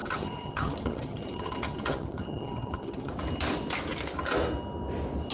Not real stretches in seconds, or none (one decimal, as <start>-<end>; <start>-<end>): 0.0-3.1